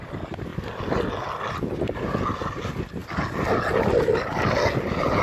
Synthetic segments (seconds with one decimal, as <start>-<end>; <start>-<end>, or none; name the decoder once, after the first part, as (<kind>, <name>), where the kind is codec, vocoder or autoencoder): none